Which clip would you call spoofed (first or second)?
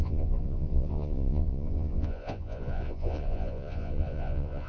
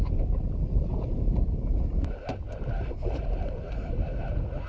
first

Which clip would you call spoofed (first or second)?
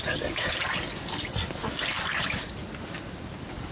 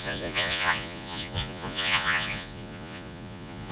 second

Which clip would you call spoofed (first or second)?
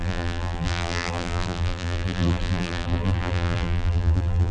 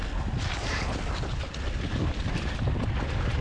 first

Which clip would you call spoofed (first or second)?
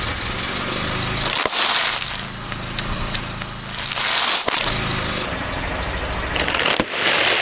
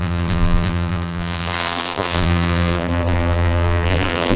second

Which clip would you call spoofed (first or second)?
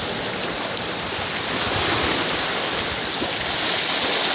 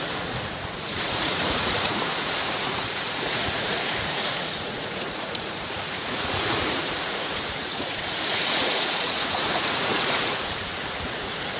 second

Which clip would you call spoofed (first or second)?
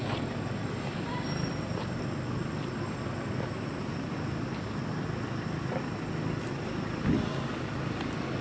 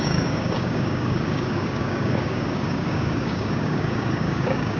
second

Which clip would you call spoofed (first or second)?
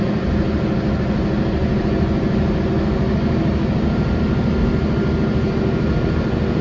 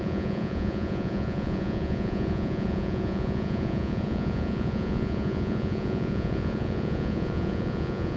second